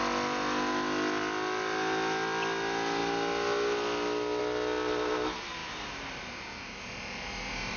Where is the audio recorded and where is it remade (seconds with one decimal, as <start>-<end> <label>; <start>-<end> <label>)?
0.0-7.8 recorded